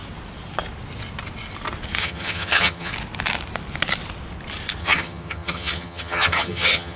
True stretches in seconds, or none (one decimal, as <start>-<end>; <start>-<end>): 0.0-2.0; 2.9-4.8